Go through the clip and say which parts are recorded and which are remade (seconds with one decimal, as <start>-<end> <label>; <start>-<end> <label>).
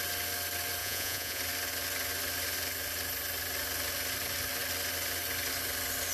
0.0-0.8 recorded; 0.8-1.4 remade; 1.4-6.1 recorded